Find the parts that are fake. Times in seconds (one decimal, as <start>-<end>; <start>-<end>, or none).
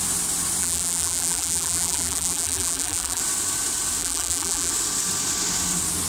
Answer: 0.6-3.2; 4.0-4.7